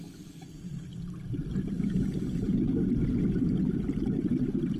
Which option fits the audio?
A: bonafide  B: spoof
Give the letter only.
A